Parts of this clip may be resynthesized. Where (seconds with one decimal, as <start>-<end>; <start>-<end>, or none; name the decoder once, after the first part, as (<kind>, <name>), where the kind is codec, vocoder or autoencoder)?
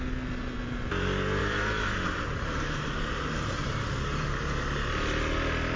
1.4-4.9 (vocoder, BigVGAN v2)